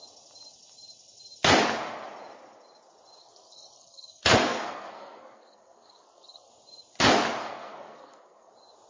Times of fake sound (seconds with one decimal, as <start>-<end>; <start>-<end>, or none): 3.2-6.5; 7.4-8.5

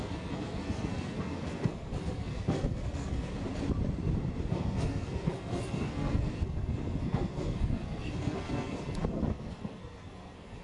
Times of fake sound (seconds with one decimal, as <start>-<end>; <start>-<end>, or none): 0.0-3.3; 4.5-10.6

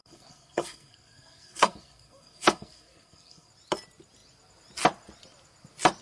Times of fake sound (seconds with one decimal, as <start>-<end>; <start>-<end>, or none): 0.0-3.5

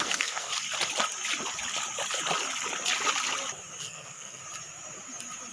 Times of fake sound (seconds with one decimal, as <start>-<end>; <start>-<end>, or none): 0.0-0.5; 3.8-4.4

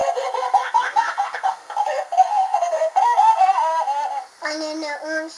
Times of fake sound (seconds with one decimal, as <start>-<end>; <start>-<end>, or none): 0.0-3.5

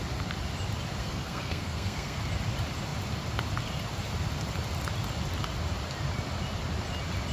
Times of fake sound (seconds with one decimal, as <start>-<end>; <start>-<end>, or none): 1.0-2.2

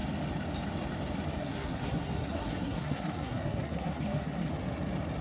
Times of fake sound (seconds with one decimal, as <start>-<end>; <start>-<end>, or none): 1.4-4.5

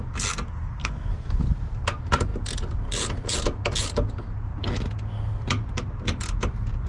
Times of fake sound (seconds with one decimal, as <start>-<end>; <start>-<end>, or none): 0.8-1.4